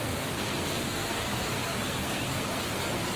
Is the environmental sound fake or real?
fake